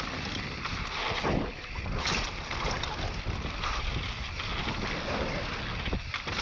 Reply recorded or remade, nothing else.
recorded